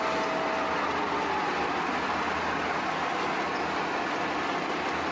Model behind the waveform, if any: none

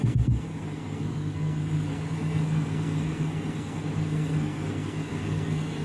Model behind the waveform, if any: codec, SNAC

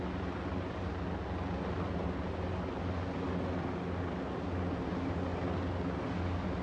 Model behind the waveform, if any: none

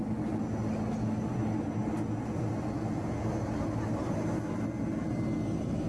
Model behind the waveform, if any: none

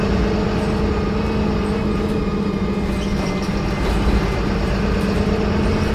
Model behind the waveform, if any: none